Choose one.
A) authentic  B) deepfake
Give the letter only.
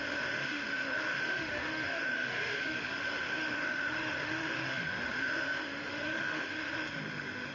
B